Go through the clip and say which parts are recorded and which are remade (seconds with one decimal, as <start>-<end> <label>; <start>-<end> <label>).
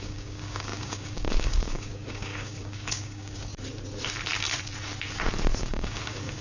0.0-3.5 remade; 3.5-5.6 recorded; 5.6-6.4 remade